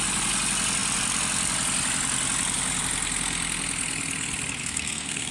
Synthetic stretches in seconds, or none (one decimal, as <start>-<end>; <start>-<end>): 4.6-5.3